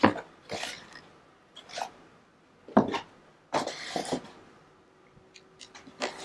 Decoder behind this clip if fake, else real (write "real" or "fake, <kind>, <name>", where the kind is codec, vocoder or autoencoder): real